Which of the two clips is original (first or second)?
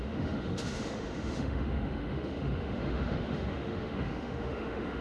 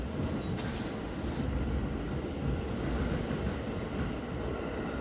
second